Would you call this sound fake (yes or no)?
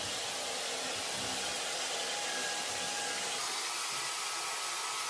no